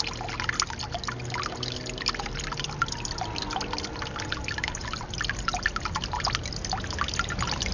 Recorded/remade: recorded